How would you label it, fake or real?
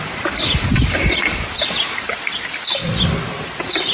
real